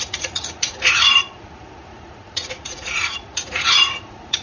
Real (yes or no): no